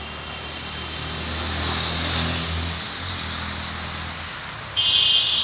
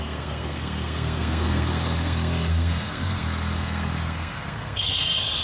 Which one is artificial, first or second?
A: second